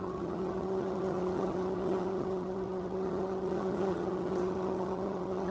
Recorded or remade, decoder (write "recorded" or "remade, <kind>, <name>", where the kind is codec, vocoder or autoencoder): remade, vocoder, HiFi-GAN